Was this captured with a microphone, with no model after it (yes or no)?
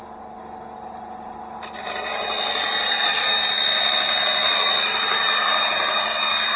yes